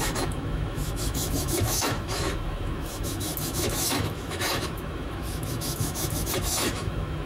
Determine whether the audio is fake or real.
fake